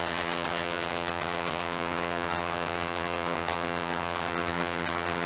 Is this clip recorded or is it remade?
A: remade